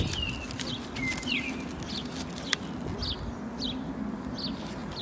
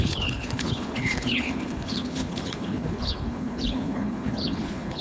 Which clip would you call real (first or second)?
first